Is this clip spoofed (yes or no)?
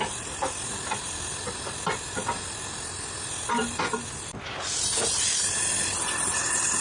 no